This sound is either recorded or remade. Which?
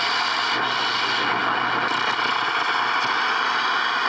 recorded